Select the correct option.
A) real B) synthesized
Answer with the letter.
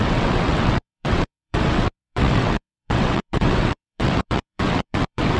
B